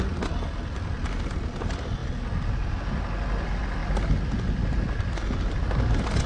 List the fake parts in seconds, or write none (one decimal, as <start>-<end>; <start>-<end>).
none